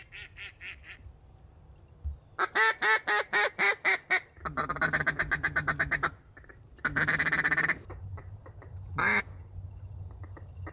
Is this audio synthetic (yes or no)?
no